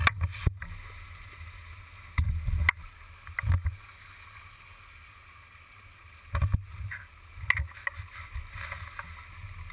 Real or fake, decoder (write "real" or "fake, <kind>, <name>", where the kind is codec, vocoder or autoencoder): real